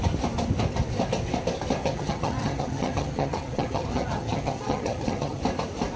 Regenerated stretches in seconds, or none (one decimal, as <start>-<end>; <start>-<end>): 1.8-5.4